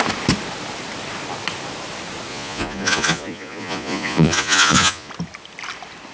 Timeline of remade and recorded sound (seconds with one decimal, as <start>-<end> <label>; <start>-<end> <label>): 0.0-2.3 recorded; 2.3-5.1 remade; 5.1-6.1 recorded